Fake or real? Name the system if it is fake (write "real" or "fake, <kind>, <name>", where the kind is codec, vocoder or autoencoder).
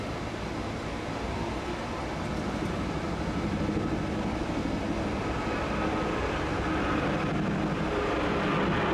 real